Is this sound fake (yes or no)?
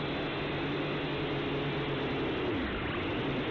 no